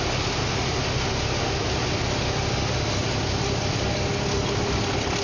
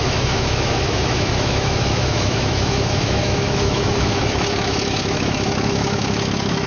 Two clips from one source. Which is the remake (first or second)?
second